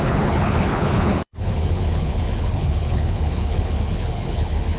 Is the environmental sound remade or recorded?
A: remade